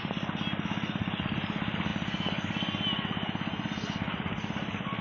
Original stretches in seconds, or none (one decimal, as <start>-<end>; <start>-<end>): 0.0-5.0